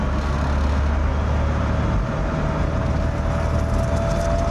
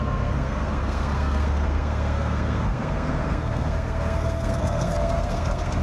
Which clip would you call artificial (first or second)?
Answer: second